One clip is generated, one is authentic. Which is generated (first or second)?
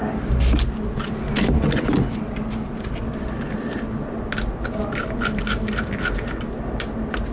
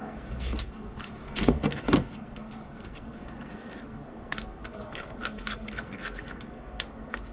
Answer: second